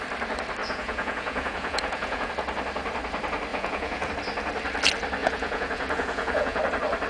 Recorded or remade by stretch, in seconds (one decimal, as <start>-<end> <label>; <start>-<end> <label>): 0.0-0.6 recorded; 0.6-2.3 remade; 2.3-3.5 recorded; 3.5-4.1 remade; 4.1-5.2 recorded; 5.2-6.6 remade; 6.6-7.1 recorded